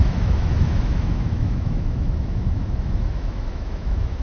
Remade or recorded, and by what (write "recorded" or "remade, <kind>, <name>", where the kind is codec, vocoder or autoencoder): remade, autoencoder, DAC-VAE